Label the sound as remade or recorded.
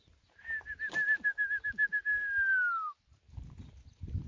recorded